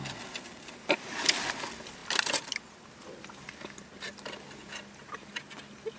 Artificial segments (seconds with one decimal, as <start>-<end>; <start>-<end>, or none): none